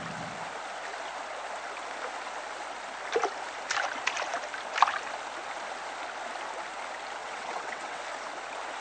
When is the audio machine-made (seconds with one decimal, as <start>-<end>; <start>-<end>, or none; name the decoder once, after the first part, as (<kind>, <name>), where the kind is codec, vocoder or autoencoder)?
7.2-8.0 (vocoder, WaveNeXt)